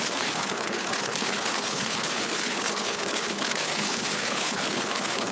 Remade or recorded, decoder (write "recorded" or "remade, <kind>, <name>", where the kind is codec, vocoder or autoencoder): remade, codec, HILCodec